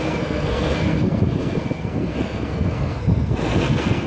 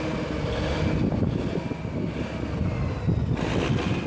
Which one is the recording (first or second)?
second